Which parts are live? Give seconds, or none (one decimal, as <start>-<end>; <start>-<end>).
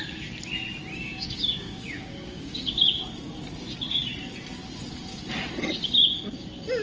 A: 0.0-0.9; 2.6-6.8